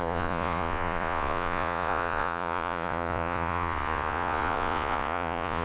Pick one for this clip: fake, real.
fake